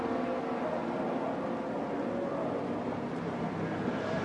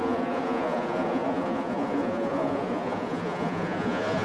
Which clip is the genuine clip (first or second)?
first